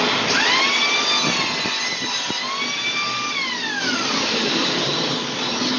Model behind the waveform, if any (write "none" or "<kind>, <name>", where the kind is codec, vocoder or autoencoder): none